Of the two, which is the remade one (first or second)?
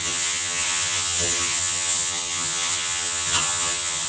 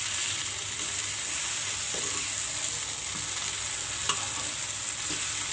first